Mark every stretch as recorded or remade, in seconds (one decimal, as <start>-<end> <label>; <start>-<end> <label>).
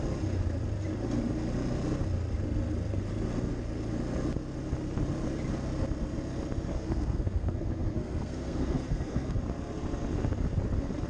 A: 0.0-6.7 recorded; 6.7-9.4 remade; 9.4-11.1 recorded